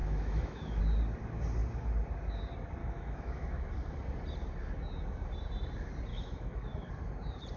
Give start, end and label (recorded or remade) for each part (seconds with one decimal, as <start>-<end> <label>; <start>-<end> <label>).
0.0-0.8 remade; 0.8-2.8 recorded; 2.8-3.7 remade; 3.7-6.1 recorded; 6.1-6.9 remade; 6.9-7.6 recorded